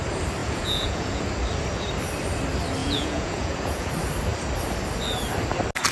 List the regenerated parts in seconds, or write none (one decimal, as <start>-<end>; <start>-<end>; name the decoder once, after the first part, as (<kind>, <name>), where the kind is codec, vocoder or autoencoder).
0.4-1.2 (vocoder, Vocos); 2.8-3.9